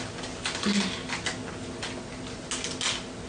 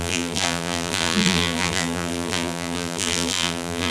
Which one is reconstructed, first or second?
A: second